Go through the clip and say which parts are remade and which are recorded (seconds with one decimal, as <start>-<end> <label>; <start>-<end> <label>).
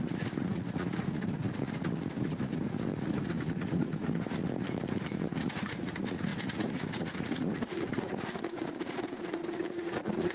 0.0-4.4 remade; 4.4-4.9 recorded; 4.9-10.3 remade